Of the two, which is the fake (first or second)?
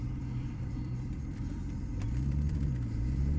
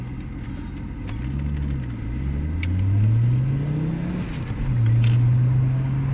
first